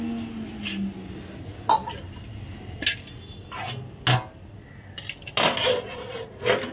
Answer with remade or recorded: recorded